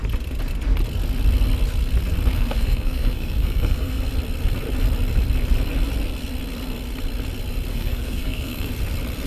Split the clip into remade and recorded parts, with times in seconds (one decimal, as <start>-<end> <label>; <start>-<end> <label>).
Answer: 0.0-2.3 recorded; 2.3-4.0 remade; 4.0-7.7 recorded; 7.7-8.7 remade; 8.7-9.3 recorded